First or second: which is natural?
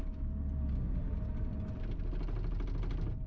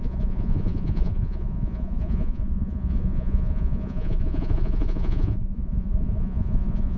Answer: first